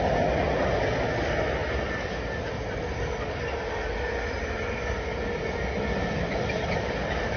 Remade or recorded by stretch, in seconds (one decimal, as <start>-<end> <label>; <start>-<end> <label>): 0.0-7.4 recorded